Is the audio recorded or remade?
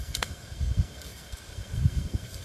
remade